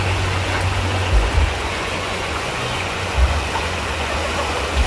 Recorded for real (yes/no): no